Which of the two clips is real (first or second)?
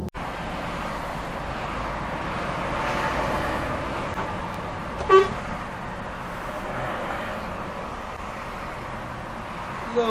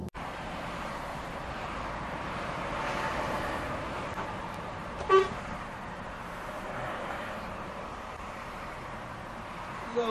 first